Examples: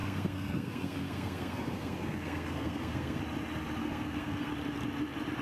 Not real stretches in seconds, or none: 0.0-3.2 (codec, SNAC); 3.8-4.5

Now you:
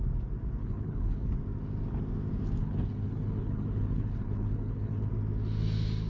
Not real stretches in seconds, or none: 0.6-1.3 (codec, HILCodec); 2.6-5.1

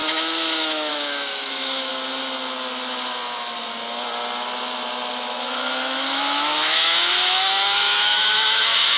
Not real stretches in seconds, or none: 0.0-1.9 (autoencoder, DAC-VAE); 5.1-9.0

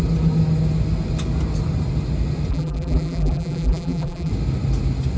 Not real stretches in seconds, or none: 2.5-4.3 (vocoder, BigVGAN v2)